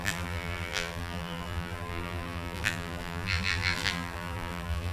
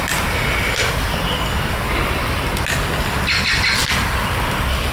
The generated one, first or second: first